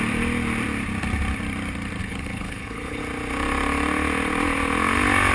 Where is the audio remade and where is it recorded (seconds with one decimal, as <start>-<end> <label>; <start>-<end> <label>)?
0.0-2.0 recorded; 2.0-3.0 remade; 3.0-5.3 recorded